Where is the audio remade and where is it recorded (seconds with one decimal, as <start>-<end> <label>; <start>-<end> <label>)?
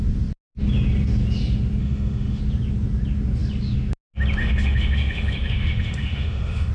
0.0-1.8 recorded; 1.8-2.4 remade; 2.4-4.4 recorded; 4.4-6.7 remade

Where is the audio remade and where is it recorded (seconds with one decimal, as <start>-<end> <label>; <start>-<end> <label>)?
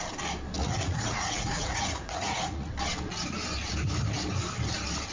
0.0-0.6 recorded; 0.6-2.7 remade; 2.7-5.1 recorded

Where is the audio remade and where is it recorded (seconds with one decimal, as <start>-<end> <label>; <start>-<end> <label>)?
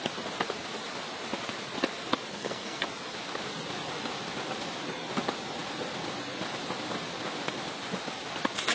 0.0-2.3 recorded; 2.3-2.8 remade; 2.8-8.7 recorded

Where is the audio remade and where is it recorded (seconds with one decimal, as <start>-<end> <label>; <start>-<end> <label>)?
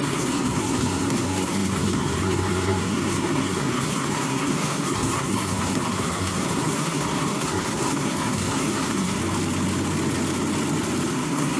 0.0-9.2 remade; 9.2-11.1 recorded; 11.1-11.6 remade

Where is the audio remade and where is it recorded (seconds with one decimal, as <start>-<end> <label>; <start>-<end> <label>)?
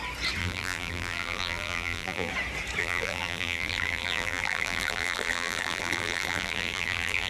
0.0-0.4 recorded; 0.4-2.3 remade; 2.3-2.8 recorded; 2.8-7.3 remade